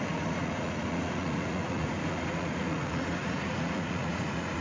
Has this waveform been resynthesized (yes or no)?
yes